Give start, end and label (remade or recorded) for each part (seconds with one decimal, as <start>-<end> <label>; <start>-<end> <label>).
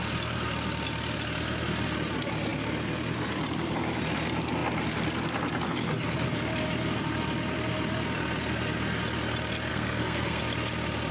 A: 0.0-9.7 recorded; 9.7-10.4 remade; 10.4-11.1 recorded